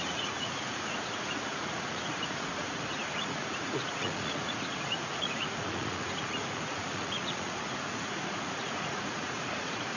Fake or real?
fake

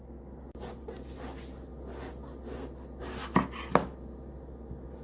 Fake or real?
real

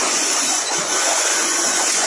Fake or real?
fake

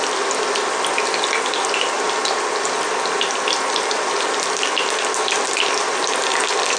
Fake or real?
real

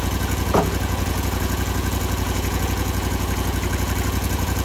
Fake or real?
fake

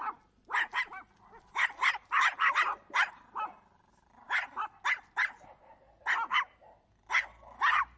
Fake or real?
real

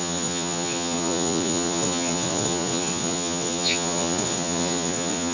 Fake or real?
fake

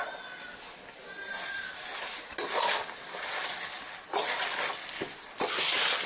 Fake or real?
real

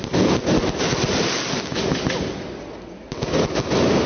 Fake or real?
real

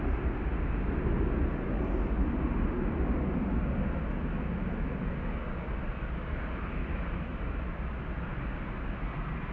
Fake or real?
real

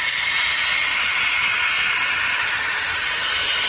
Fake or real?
real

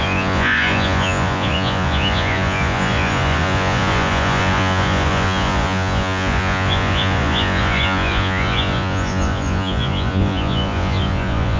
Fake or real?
fake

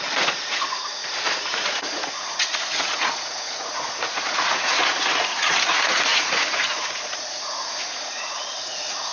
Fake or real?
fake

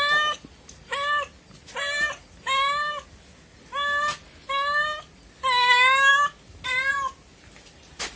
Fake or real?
real